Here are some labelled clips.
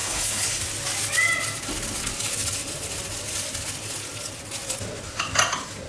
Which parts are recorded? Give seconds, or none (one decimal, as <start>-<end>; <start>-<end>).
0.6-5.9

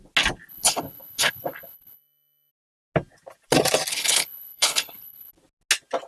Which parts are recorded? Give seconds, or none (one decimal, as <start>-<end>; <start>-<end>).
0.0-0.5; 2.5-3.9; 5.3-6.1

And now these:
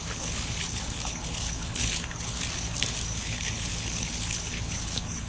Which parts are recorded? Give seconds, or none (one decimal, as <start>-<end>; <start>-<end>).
2.4-3.2